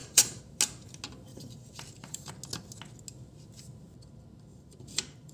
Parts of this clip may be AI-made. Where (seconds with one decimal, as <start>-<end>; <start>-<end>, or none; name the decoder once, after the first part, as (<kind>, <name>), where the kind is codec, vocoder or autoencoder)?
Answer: 0.0-0.6 (vocoder, BigVGAN v2); 1.3-2.3; 4.5-5.3